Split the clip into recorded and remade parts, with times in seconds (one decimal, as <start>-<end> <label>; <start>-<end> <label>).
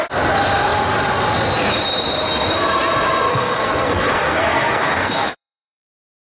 0.0-3.3 recorded; 3.3-6.3 remade